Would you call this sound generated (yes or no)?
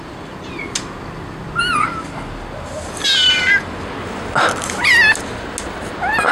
no